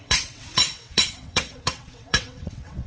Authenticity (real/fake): fake